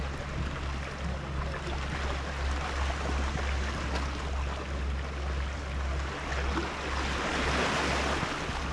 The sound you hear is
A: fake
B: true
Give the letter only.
B